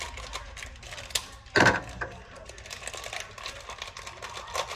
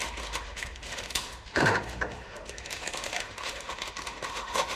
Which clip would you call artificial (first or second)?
second